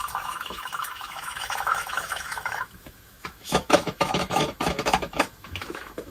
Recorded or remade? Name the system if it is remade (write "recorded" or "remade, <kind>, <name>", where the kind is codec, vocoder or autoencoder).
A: remade, autoencoder, DAC-VAE